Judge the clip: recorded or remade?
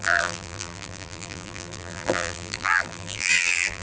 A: remade